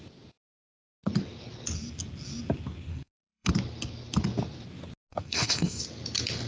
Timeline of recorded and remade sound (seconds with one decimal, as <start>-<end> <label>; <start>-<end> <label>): 0.0-2.9 recorded; 2.9-3.5 remade; 3.5-5.1 recorded; 5.1-5.8 remade; 5.8-6.5 recorded